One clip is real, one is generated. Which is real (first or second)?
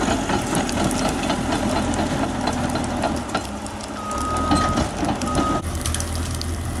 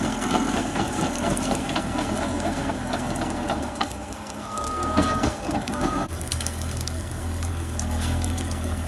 first